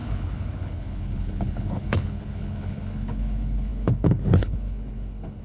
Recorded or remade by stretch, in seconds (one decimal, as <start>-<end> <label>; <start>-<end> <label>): 0.0-5.4 remade